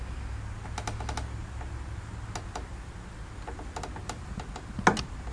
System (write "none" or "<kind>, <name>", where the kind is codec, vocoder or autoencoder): none